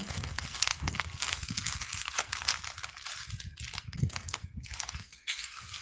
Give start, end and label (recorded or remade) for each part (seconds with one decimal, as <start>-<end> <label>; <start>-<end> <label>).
0.0-2.5 remade; 2.5-3.8 recorded; 3.8-5.8 remade